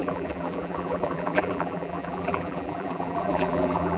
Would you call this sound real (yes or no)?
no